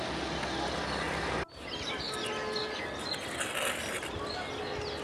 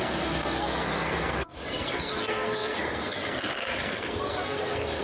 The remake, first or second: second